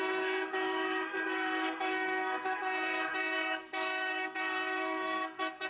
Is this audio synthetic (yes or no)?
yes